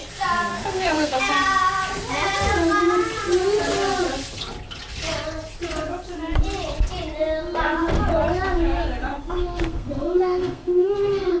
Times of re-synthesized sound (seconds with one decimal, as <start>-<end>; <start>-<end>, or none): 0.5-1.2; 9.0-11.4